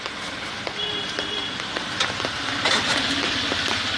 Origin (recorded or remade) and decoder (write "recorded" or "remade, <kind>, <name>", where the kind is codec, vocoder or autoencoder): recorded